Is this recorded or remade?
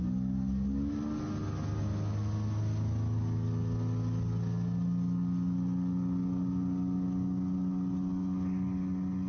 recorded